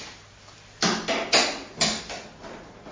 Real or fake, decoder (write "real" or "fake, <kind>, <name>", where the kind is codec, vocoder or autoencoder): real